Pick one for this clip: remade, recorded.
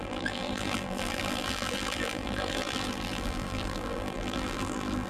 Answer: remade